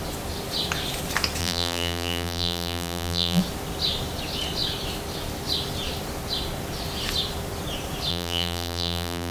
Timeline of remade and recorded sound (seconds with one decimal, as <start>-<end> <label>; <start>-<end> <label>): 0.0-1.4 recorded; 1.4-3.4 remade; 3.4-8.1 recorded; 8.1-9.3 remade

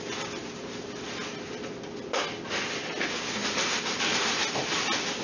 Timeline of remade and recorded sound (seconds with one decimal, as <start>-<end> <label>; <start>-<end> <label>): 0.0-0.4 recorded; 0.4-0.9 remade; 0.9-3.4 recorded; 3.4-4.0 remade; 4.0-5.2 recorded

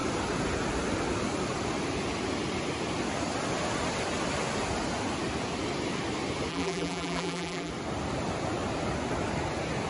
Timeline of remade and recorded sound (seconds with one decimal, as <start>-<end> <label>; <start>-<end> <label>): 0.0-6.5 recorded; 6.5-7.7 remade; 7.7-9.9 recorded

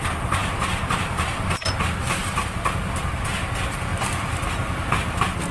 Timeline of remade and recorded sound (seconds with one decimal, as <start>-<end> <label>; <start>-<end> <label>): 0.0-2.2 recorded; 2.2-3.1 remade; 3.1-3.9 recorded; 3.9-4.5 remade; 4.5-5.5 recorded

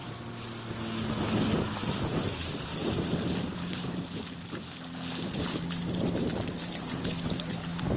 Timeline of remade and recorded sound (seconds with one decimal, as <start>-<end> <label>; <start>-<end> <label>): 0.0-1.8 recorded; 1.8-2.7 remade; 2.7-3.3 recorded; 3.3-4.2 remade; 4.2-5.3 recorded; 5.3-8.0 remade

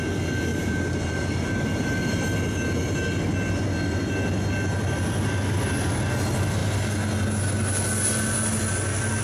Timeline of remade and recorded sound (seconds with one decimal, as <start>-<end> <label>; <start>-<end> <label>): 0.0-0.5 recorded; 0.5-2.2 remade; 2.2-9.2 recorded

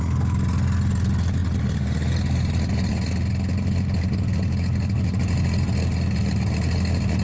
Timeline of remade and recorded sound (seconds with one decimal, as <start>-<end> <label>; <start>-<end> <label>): 0.0-7.2 recorded

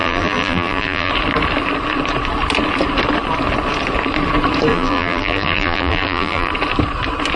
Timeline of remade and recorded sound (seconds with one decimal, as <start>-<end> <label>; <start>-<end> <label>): 0.0-1.1 remade; 1.1-4.7 recorded; 4.7-6.5 remade; 6.5-7.4 recorded